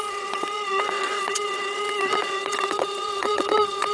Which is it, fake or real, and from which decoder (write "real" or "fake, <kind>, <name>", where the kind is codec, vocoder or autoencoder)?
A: fake, vocoder, WaveNeXt